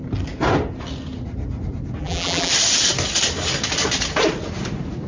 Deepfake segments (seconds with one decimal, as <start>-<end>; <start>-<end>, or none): 2.0-2.5